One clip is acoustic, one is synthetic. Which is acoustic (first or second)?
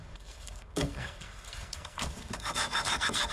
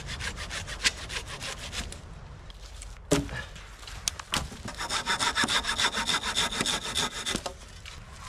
second